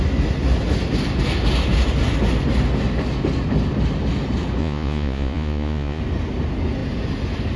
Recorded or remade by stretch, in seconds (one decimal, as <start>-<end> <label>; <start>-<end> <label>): 0.0-4.6 recorded; 4.6-6.0 remade; 6.0-7.6 recorded